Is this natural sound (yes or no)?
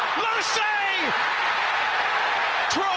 yes